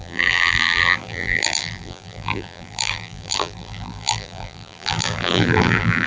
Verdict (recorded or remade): remade